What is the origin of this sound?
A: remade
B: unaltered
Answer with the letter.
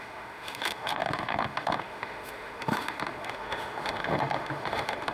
A